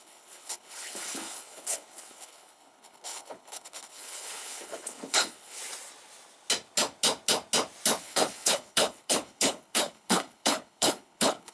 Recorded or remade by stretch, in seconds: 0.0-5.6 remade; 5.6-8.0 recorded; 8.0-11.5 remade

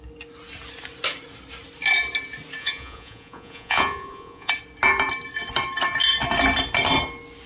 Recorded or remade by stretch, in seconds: 0.0-2.6 recorded; 2.6-4.5 remade; 4.5-7.5 recorded

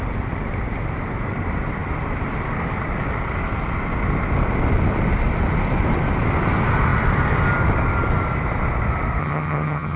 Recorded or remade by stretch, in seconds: 0.0-9.2 recorded; 9.2-10.0 remade

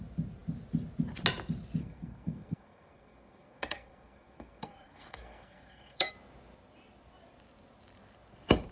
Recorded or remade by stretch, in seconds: 0.0-1.8 recorded; 1.8-6.1 remade; 6.1-8.7 recorded